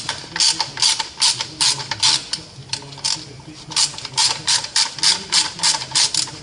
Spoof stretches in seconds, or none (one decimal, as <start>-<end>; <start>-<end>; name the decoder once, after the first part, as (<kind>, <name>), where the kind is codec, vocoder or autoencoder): none

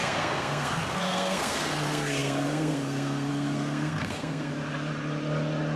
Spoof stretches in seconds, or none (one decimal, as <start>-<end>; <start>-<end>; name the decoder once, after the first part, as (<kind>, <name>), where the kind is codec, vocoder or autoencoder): 0.0-4.5 (codec, SNAC)

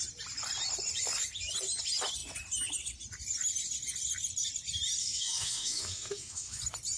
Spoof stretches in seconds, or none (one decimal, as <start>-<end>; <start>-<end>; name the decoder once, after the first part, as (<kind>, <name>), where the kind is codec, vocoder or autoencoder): 5.0-6.6 (autoencoder, DAC-VAE)

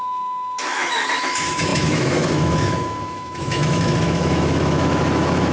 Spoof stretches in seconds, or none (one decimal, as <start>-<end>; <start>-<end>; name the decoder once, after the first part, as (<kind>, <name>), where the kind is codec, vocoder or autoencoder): 0.0-5.5 (autoencoder, DAC-VAE)